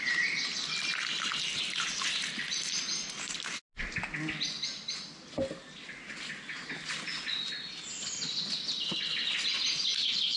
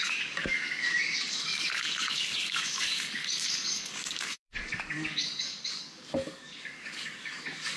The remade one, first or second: second